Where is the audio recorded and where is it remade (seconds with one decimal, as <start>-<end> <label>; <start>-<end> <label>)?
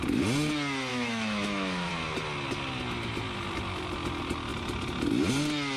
0.0-0.9 recorded; 0.9-1.9 remade; 1.9-5.8 recorded